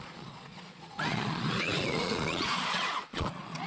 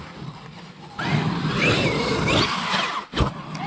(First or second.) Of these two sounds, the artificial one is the first